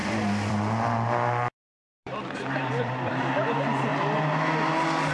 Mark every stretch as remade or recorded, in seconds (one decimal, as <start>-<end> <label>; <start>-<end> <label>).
0.0-3.1 remade; 3.1-5.1 recorded